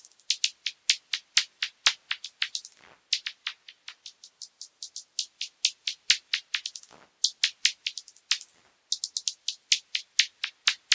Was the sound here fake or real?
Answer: real